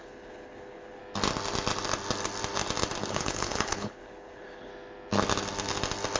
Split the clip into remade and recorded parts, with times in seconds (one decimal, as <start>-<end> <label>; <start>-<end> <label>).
0.0-1.0 remade; 1.0-3.1 recorded; 3.1-4.7 remade; 4.7-6.2 recorded